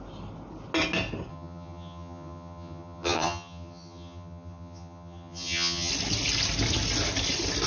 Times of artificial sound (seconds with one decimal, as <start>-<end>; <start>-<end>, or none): 1.3-5.9